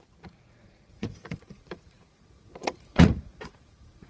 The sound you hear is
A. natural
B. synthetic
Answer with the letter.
B